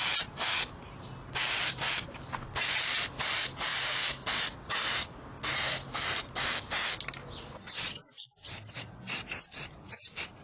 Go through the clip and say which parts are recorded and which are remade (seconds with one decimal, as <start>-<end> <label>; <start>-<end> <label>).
0.0-10.4 recorded